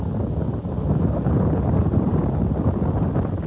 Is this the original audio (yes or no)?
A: yes